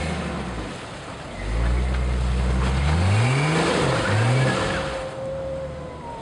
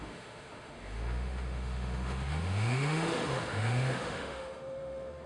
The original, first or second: first